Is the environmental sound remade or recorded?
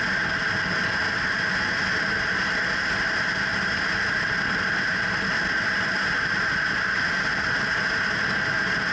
recorded